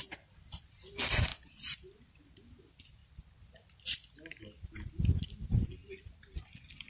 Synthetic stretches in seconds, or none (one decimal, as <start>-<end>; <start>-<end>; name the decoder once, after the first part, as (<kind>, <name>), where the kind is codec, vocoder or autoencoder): none